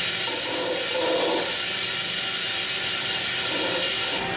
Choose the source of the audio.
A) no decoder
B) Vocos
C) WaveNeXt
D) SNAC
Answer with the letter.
A